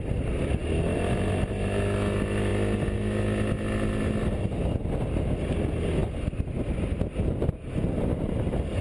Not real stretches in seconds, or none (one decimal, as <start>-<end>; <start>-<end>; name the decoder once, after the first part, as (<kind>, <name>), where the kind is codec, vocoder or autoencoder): none